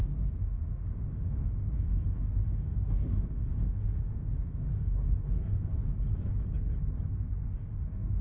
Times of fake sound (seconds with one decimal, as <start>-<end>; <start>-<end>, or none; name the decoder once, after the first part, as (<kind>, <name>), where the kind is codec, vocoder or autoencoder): 0.0-5.7 (autoencoder, DAC-VAE); 7.5-8.2

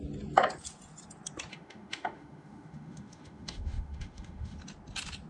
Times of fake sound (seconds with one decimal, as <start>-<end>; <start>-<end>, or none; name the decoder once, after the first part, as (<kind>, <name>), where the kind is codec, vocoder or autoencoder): 1.5-4.6 (autoencoder, DAC-VAE)

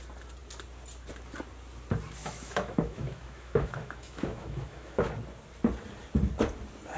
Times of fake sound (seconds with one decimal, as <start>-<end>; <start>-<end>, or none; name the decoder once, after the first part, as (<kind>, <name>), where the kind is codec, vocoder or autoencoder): 2.2-5.1 (autoencoder, DAC-VAE)

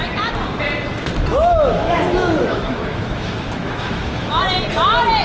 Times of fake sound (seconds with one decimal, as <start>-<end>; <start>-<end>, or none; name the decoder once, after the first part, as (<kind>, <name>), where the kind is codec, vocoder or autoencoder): 1.3-4.4 (autoencoder, DAC-VAE)